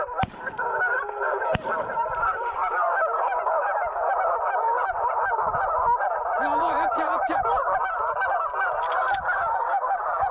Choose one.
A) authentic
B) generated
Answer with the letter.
B